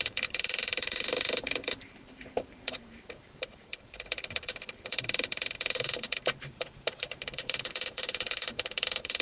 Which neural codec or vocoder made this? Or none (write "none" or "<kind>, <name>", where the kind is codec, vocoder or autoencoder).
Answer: vocoder, BigVGAN v2